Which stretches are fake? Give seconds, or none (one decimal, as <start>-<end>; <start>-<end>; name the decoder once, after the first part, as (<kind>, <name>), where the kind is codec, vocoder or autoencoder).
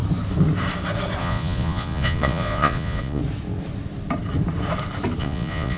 1.2-3.2 (vocoder, Vocos); 5.2-5.8